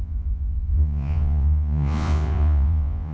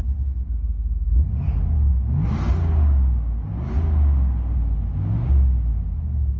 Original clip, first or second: second